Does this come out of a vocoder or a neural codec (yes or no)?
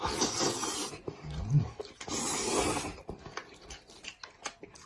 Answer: no